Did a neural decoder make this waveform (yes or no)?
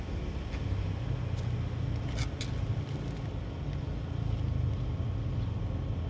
no